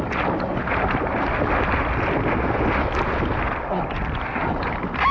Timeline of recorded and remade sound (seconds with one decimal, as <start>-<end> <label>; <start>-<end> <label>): 0.0-5.1 recorded